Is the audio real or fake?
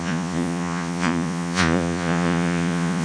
fake